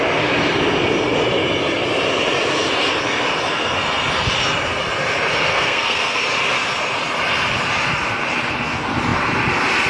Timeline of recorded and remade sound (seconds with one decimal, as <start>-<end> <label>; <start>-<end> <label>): 0.0-5.5 recorded; 5.5-6.2 remade; 6.2-9.9 recorded